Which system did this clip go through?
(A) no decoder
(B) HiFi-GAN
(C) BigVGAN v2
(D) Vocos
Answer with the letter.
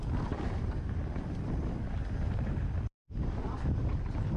A